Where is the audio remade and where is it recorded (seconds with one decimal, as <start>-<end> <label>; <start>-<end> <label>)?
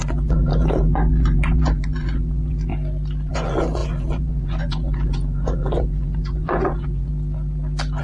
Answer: 0.0-2.7 remade; 2.7-3.3 recorded; 3.3-7.1 remade; 7.1-8.0 recorded